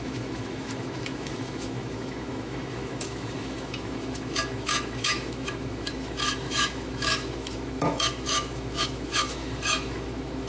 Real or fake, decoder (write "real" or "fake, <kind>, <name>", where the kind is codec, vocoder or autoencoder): fake, autoencoder, DAC-VAE